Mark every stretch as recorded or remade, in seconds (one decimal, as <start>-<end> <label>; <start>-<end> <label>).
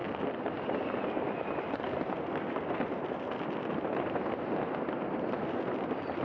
0.0-6.2 recorded